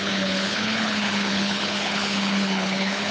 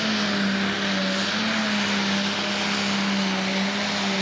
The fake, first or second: first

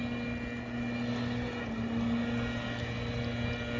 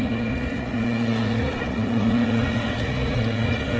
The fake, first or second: second